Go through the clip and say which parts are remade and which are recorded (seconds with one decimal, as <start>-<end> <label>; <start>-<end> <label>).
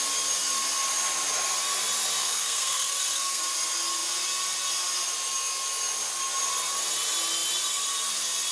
0.0-2.2 recorded; 2.2-3.4 remade; 3.4-8.5 recorded